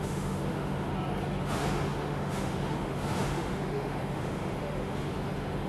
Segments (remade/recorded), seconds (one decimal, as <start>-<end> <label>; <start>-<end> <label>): 0.0-0.9 remade; 0.9-1.4 recorded; 1.4-5.7 remade